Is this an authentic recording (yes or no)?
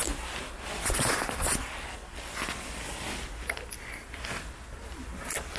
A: yes